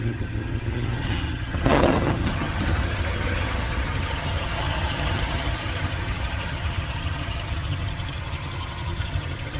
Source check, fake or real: fake